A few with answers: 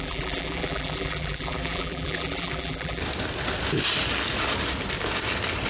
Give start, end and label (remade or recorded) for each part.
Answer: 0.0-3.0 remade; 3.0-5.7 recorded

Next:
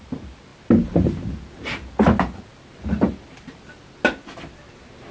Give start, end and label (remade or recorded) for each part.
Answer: 0.0-5.1 recorded

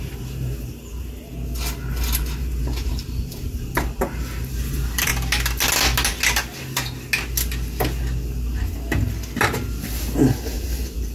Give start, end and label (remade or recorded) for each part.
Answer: 0.0-1.3 remade; 1.3-2.4 recorded; 2.4-5.1 remade; 5.1-9.8 recorded; 9.8-11.1 remade

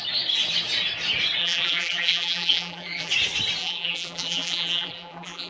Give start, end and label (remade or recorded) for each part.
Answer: 0.0-1.4 recorded; 1.4-3.1 remade; 3.1-3.6 recorded; 3.6-5.5 remade

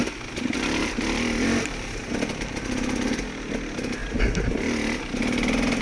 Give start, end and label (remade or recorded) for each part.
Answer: 0.0-5.8 recorded

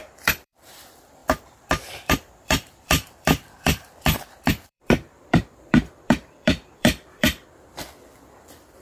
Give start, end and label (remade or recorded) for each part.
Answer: 0.0-8.8 remade